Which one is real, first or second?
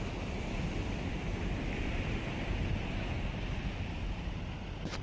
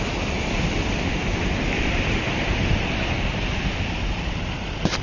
first